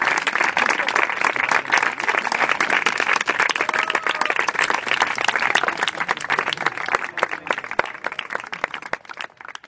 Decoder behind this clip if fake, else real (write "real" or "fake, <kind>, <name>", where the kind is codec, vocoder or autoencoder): real